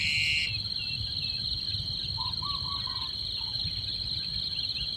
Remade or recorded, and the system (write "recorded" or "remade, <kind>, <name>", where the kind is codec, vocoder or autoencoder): recorded